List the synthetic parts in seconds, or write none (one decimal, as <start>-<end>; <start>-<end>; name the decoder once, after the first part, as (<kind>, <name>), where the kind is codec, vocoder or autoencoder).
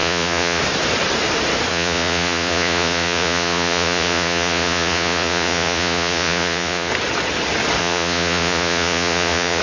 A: 0.0-0.6 (vocoder, Vocos); 1.7-6.9; 7.8-9.6